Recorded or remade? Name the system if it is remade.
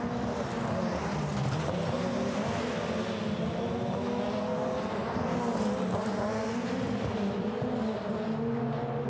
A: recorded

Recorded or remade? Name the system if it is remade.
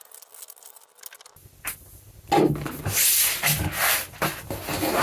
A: recorded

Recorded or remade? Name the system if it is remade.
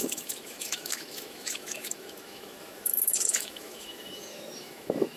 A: remade, autoencoder, DAC-VAE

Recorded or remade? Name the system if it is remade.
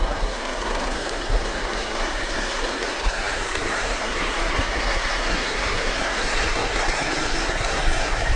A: remade, codec, SNAC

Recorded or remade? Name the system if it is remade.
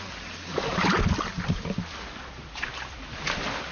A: recorded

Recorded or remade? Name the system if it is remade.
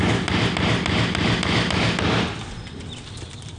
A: recorded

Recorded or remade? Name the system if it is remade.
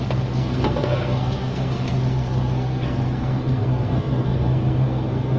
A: remade, codec, SNAC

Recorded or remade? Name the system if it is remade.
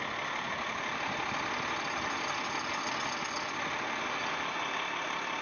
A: recorded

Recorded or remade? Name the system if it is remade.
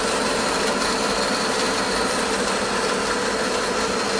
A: recorded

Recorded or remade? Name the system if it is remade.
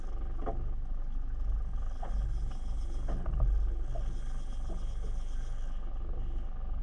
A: recorded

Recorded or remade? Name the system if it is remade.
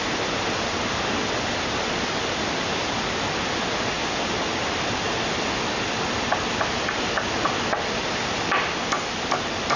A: recorded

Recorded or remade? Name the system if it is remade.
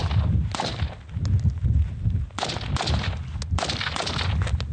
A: recorded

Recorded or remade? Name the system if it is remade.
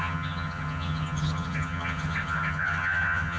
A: remade, vocoder, HiFi-GAN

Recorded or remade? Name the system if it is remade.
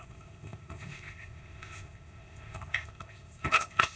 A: remade, codec, ZipCodec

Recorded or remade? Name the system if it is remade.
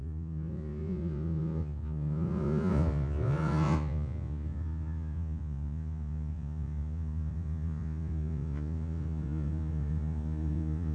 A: remade, vocoder, Vocos